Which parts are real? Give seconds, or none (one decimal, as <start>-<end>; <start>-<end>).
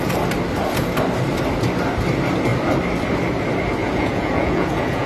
0.0-3.8